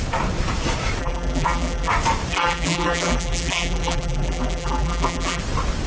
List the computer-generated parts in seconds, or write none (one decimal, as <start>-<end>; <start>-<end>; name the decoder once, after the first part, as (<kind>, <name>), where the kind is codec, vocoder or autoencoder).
1.0-1.9 (vocoder, BigVGAN v2); 2.3-5.4